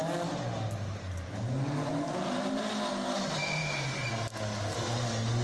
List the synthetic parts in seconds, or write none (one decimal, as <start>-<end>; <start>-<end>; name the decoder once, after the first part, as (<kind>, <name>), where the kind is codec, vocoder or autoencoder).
none